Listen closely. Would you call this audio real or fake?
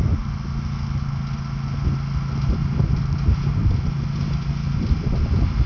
real